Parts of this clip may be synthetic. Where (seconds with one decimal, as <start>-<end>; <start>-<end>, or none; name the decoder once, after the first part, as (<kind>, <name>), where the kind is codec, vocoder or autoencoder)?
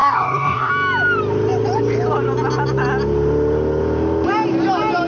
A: 0.0-0.7 (codec, SNAC)